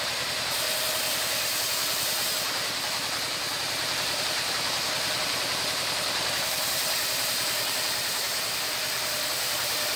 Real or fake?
fake